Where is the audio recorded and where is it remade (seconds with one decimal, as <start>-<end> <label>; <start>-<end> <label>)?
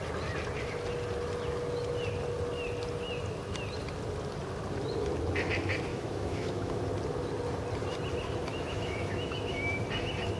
0.0-5.9 recorded; 5.9-6.8 remade; 6.8-8.5 recorded; 8.5-9.8 remade; 9.8-10.4 recorded